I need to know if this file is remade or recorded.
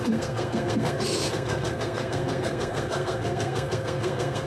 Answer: remade